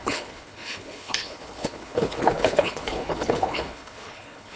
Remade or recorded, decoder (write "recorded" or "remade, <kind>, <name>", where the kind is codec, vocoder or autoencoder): remade, codec, HILCodec